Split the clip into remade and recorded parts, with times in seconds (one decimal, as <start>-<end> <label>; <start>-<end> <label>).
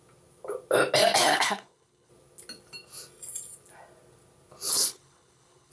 0.0-1.3 recorded; 1.3-2.1 remade; 2.1-4.7 recorded; 4.7-5.7 remade